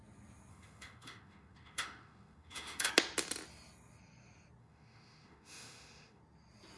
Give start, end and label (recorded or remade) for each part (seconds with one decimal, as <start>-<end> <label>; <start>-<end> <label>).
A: 0.0-0.5 recorded; 0.5-2.9 remade; 2.9-4.6 recorded; 4.6-6.2 remade; 6.2-6.8 recorded